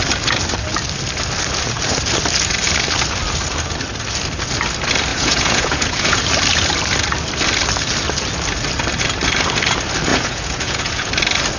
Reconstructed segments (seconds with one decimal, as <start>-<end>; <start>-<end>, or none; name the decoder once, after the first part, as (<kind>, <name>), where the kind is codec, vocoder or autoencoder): 5.1-6.2 (vocoder, Vocos); 10.1-11.1